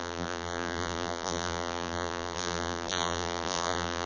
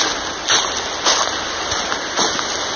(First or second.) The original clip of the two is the second